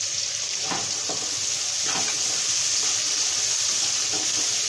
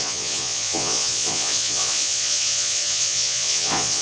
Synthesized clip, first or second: second